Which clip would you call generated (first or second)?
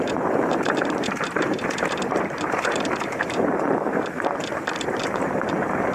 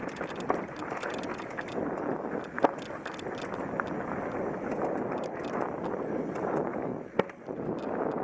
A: first